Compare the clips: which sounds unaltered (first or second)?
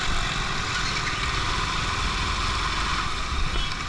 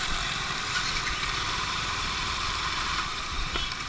first